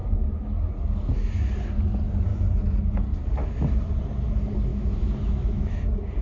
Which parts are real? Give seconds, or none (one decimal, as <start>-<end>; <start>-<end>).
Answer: 0.7-4.7; 5.7-6.2